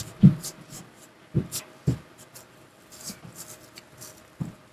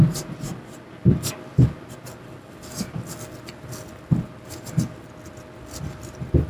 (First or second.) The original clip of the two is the second